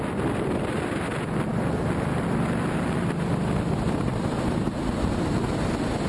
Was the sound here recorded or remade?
recorded